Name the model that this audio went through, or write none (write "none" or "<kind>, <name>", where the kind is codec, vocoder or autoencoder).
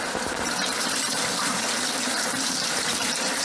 vocoder, BigVGAN v2